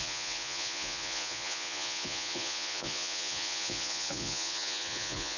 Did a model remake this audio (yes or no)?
yes